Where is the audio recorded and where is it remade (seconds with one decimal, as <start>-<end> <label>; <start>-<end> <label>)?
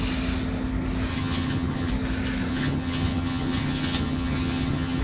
0.0-1.1 recorded; 1.1-1.9 remade; 1.9-2.5 recorded; 2.5-5.0 remade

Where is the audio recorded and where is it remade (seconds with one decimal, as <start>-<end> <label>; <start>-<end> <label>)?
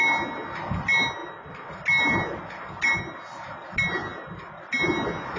0.0-5.4 recorded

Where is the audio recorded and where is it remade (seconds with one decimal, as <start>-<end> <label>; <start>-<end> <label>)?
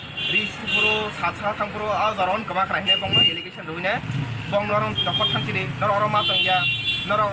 0.0-7.3 recorded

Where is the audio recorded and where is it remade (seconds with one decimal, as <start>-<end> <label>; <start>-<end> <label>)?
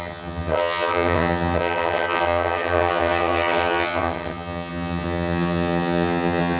0.0-6.6 remade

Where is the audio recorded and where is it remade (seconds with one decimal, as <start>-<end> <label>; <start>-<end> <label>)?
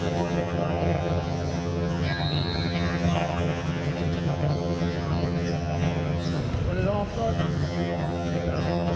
0.0-6.4 remade; 6.4-7.3 recorded; 7.3-9.0 remade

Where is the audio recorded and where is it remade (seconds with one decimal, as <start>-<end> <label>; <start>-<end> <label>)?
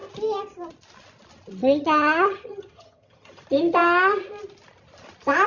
0.0-1.6 recorded; 1.6-3.4 remade; 3.4-5.5 recorded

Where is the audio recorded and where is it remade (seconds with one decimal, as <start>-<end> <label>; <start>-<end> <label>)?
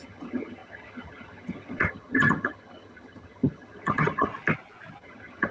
0.0-4.3 remade; 4.3-5.0 recorded; 5.0-5.5 remade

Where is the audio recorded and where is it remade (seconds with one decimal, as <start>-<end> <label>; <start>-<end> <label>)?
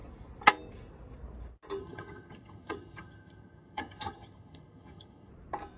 0.0-1.8 recorded; 1.8-5.3 remade; 5.3-5.8 recorded